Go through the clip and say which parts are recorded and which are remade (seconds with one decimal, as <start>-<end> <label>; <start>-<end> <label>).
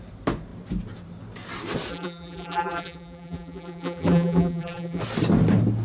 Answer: 0.0-1.9 recorded; 1.9-5.0 remade; 5.0-5.8 recorded